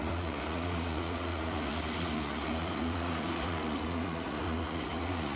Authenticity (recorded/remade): remade